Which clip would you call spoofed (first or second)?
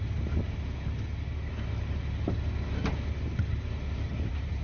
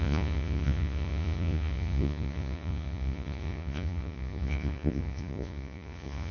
second